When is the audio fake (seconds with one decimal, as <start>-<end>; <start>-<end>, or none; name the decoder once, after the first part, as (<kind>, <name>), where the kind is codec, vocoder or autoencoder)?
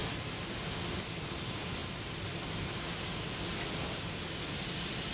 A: 0.0-1.8 (vocoder, BigVGAN v2)